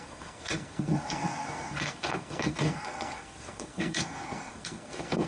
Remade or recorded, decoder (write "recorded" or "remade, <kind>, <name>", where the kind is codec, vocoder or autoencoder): remade, codec, SNAC